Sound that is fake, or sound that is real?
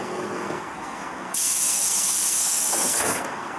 fake